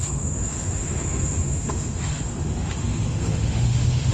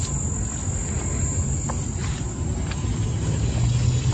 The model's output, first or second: first